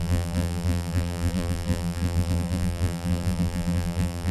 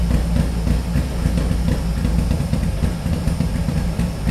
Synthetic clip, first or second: first